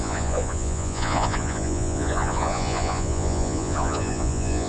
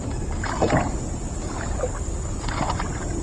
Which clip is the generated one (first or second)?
first